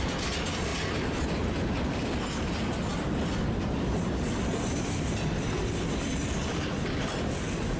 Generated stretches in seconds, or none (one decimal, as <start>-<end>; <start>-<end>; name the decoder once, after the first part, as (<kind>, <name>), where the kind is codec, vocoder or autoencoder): 0.7-1.5 (vocoder, BigVGAN v2)